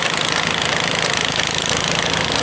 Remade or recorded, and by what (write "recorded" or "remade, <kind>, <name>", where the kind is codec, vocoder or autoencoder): recorded